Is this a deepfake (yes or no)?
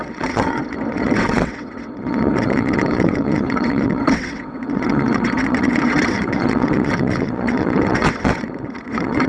yes